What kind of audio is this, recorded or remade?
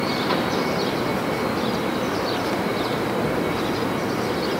recorded